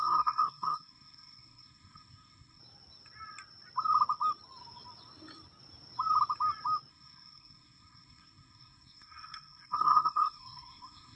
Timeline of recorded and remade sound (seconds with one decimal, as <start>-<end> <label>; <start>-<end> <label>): 0.0-2.6 remade; 2.6-6.9 recorded; 6.9-11.2 remade